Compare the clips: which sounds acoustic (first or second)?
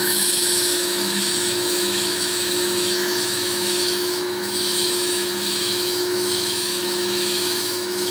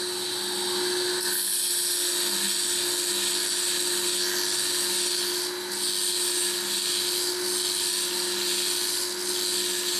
second